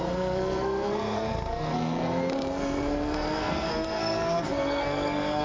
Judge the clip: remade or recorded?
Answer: remade